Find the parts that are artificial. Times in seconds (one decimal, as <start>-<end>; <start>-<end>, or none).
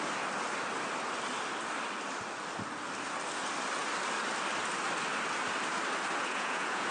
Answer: 6.2-6.9